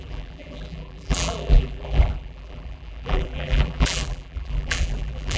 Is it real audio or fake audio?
fake